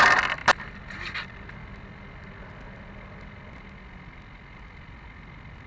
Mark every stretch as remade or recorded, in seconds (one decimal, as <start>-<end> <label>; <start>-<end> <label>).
0.0-5.7 recorded